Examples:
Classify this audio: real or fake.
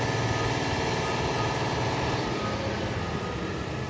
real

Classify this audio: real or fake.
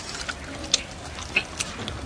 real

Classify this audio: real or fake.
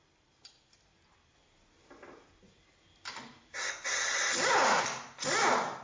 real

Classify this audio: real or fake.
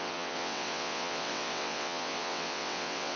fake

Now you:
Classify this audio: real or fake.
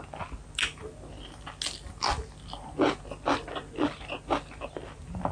real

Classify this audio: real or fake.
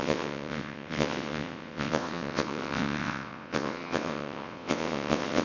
fake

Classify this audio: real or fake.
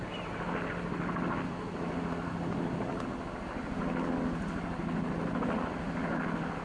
real